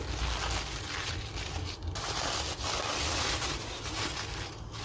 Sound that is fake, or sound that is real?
real